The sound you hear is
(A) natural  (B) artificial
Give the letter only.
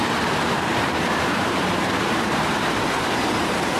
B